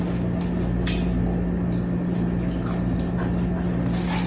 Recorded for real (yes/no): yes